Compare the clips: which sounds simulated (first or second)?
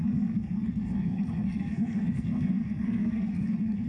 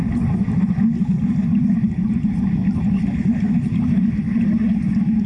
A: first